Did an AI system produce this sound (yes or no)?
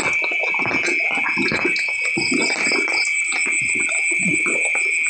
no